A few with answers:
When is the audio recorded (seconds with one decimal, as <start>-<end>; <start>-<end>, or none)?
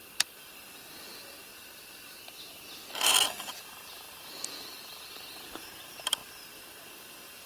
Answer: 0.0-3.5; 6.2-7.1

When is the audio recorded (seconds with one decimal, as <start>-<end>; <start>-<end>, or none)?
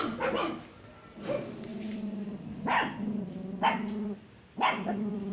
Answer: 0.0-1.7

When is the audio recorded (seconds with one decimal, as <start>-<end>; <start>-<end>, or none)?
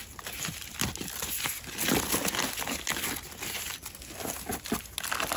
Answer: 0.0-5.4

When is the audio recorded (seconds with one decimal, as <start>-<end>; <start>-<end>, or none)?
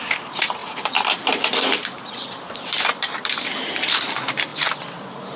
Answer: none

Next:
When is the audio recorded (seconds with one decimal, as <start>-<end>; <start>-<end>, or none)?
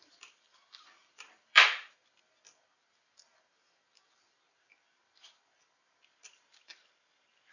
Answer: none